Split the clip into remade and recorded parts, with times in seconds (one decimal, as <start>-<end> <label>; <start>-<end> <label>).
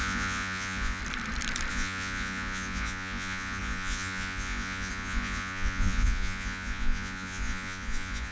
0.0-1.0 remade; 1.0-1.7 recorded; 1.7-8.3 remade